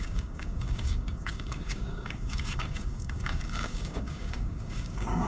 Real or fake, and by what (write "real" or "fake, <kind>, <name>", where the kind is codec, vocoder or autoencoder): fake, codec, DAC